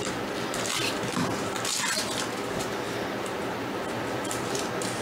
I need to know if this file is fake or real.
real